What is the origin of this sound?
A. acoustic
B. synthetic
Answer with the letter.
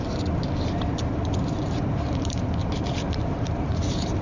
B